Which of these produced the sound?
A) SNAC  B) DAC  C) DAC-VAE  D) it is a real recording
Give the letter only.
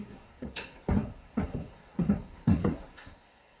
A